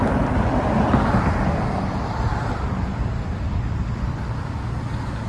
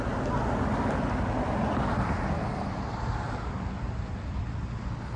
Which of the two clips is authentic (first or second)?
second